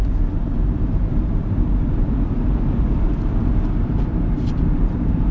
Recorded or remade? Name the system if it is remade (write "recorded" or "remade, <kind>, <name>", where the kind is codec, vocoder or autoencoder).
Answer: remade, vocoder, BigVGAN v2